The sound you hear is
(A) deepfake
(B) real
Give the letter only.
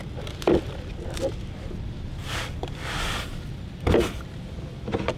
B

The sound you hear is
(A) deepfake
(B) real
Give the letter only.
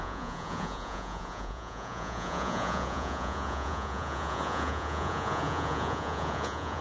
A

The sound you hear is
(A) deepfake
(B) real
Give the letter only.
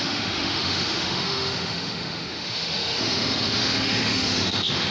A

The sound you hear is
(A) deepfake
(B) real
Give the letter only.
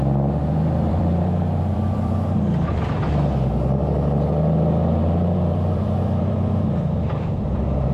A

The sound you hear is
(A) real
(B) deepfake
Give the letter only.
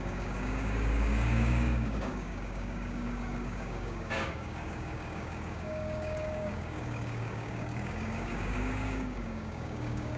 B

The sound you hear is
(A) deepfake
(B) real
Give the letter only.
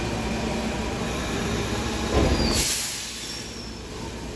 B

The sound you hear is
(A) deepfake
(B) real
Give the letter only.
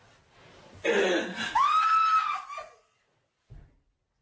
B